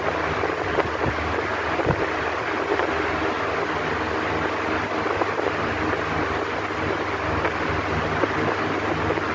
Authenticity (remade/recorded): recorded